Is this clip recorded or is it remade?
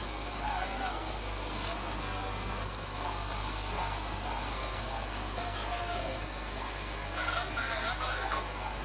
remade